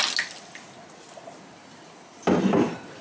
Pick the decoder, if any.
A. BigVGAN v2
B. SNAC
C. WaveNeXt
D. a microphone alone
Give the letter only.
D